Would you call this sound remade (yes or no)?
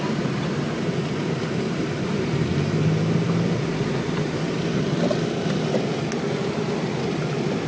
no